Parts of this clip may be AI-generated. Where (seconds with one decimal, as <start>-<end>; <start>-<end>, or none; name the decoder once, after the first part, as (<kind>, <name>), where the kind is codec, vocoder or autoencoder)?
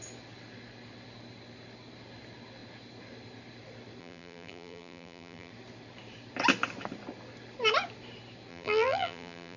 4.0-5.5 (vocoder, BigVGAN v2); 8.5-9.6